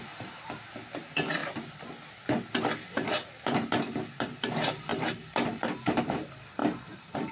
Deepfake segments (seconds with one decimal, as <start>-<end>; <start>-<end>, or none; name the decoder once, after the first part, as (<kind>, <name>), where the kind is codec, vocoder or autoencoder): 0.0-1.4 (vocoder, BigVGAN v2); 2.6-3.2; 3.8-7.3